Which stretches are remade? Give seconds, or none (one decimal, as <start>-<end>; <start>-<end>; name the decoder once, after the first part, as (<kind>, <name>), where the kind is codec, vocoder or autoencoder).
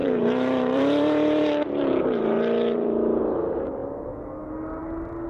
0.0-3.2 (vocoder, BigVGAN v2)